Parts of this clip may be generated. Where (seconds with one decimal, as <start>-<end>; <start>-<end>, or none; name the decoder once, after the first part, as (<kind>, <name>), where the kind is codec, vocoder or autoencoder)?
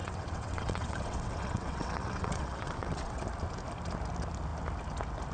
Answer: 0.0-3.2 (vocoder, WaveNeXt)